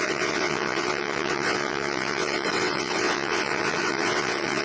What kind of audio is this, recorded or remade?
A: remade